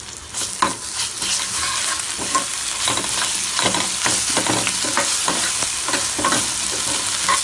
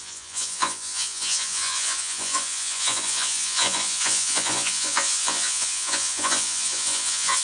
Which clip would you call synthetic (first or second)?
second